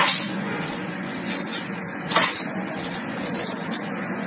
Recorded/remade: remade